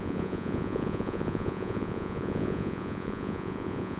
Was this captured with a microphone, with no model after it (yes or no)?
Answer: no